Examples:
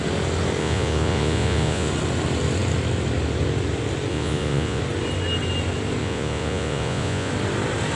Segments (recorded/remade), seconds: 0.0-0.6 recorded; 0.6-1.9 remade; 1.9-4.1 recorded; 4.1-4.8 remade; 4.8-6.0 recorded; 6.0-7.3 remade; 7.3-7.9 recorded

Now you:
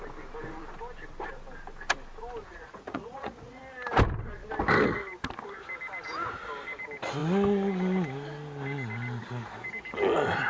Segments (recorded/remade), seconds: 0.0-2.5 recorded; 2.5-3.6 remade; 3.6-10.5 recorded

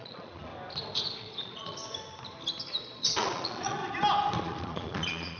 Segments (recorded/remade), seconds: 0.0-0.5 remade; 0.5-1.2 recorded; 1.2-1.8 remade; 1.8-2.8 recorded; 2.8-3.8 remade; 3.8-4.4 recorded; 4.4-5.4 remade

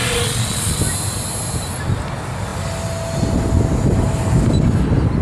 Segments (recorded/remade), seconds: 0.0-0.8 remade; 0.8-5.2 recorded

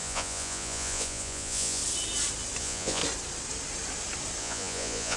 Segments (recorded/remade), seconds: 0.0-1.8 remade; 1.8-2.6 recorded; 2.6-3.0 remade; 3.0-4.4 recorded; 4.4-5.2 remade